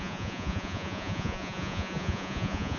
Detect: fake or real fake